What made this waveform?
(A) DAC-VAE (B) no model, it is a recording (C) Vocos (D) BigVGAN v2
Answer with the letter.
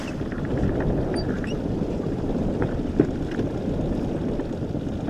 B